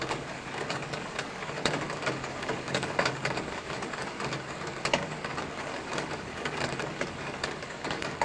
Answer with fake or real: fake